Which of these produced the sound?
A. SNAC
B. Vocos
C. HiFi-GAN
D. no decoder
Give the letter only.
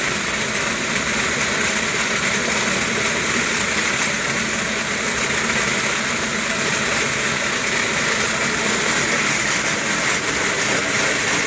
D